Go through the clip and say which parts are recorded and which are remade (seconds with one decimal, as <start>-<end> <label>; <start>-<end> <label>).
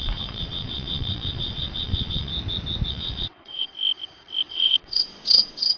0.0-2.3 remade; 2.3-2.9 recorded; 2.9-3.7 remade; 3.7-4.5 recorded; 4.5-5.8 remade